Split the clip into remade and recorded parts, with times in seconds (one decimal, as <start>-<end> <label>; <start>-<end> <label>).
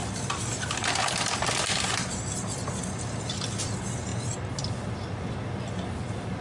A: 0.0-2.0 remade; 2.0-6.4 recorded